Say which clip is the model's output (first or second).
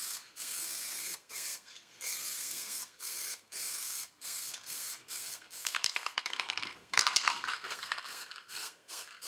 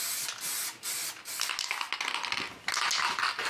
first